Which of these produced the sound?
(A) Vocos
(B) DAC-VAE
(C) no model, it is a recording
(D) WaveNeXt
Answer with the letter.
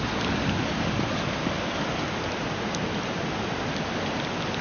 C